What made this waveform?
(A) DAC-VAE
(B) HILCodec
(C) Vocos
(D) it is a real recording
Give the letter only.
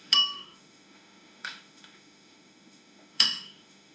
A